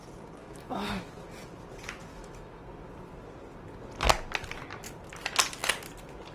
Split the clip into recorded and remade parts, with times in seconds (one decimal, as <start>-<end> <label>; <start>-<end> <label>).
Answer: 0.0-0.4 recorded; 0.4-1.1 remade; 1.1-2.1 recorded; 2.1-2.6 remade; 2.6-6.3 recorded